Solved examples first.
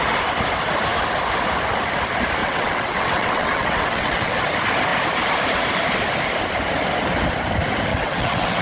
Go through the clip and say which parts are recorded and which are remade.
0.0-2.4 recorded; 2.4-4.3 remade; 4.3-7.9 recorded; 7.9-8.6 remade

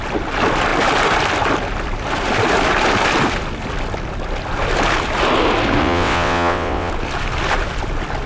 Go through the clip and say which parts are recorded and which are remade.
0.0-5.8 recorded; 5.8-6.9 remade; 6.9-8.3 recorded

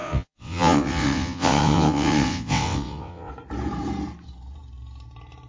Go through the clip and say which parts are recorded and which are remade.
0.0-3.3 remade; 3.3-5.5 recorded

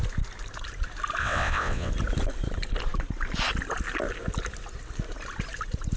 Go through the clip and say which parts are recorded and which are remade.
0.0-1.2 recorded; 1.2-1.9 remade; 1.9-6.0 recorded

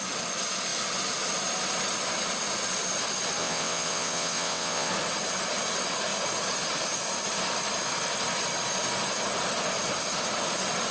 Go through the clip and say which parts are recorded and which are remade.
0.0-3.4 recorded; 3.4-4.9 remade; 4.9-10.9 recorded

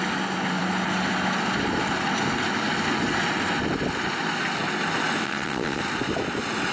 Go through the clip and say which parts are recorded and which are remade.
0.0-5.2 recorded; 5.2-5.8 remade; 5.8-6.7 recorded

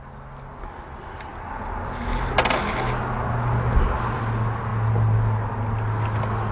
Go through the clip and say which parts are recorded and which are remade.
0.0-6.5 recorded

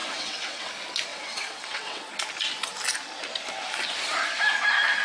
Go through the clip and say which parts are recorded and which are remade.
0.0-0.7 remade; 0.7-1.1 recorded; 1.1-2.1 remade; 2.1-5.0 recorded